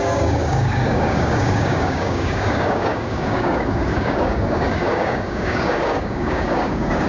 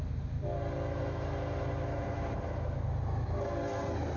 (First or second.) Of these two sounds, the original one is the second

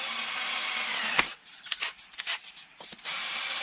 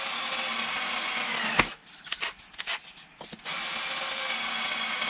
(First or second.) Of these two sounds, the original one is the second